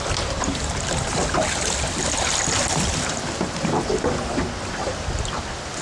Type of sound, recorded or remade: recorded